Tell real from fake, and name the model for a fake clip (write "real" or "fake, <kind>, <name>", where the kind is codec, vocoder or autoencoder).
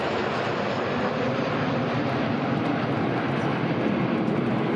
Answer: real